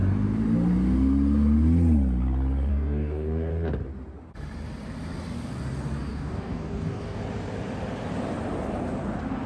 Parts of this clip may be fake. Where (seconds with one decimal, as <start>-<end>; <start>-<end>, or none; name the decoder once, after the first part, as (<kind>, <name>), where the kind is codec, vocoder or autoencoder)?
2.7-3.5 (codec, DAC); 6.1-7.2